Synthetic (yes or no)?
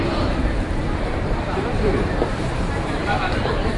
yes